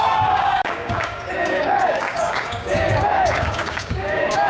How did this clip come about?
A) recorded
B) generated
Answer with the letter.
B